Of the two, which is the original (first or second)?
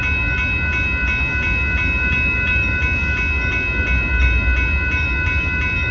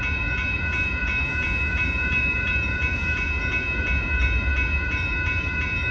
first